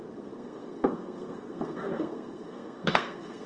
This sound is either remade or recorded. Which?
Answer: remade